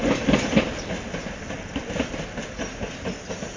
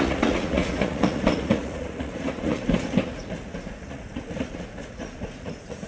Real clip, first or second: first